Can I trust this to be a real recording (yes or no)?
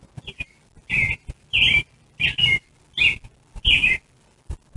yes